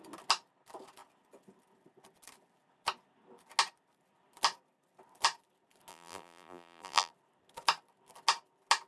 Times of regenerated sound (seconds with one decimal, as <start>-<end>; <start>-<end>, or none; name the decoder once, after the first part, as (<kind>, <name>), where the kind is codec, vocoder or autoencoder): 5.9-7.1 (vocoder, BigVGAN v2)